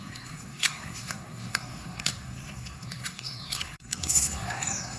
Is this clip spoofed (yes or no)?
yes